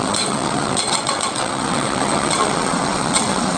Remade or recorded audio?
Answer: remade